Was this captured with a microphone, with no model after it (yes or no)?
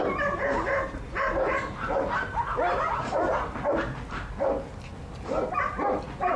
yes